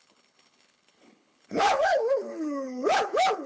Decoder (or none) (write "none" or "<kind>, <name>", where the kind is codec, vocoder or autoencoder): codec, HILCodec